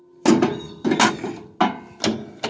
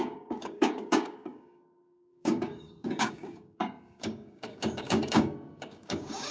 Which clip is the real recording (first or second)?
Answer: first